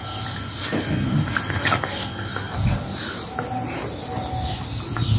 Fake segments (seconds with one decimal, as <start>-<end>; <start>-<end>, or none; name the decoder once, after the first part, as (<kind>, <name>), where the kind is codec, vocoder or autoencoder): none